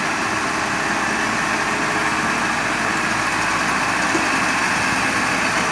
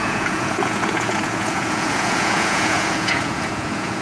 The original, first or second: first